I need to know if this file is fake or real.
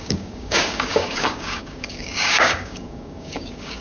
fake